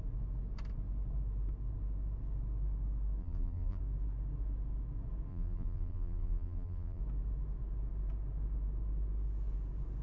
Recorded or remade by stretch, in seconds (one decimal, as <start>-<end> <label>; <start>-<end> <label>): 0.0-3.2 recorded; 3.2-3.8 remade; 3.8-5.3 recorded; 5.3-7.0 remade; 7.0-10.0 recorded